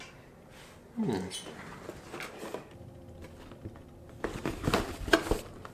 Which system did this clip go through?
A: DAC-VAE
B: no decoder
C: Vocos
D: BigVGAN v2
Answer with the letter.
B